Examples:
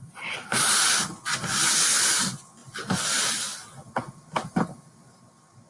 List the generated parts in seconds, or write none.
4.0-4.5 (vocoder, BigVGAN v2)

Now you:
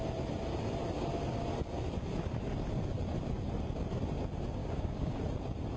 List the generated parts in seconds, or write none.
4.6-5.2 (codec, DAC)

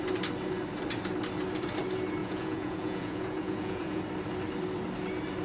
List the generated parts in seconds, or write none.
2.2-4.0 (vocoder, Vocos)

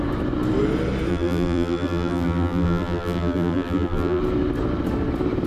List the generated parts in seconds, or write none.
1.1-4.2 (vocoder, BigVGAN v2)